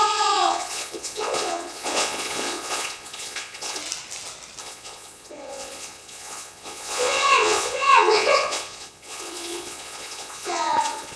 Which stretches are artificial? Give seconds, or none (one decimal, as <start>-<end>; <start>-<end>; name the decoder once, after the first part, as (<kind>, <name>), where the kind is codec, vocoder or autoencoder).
0.0-3.8 (vocoder, Vocos); 4.6-11.2